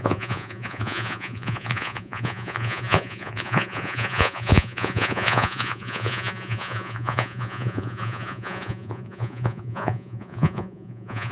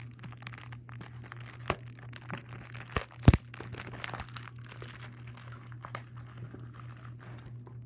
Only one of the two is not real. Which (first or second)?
first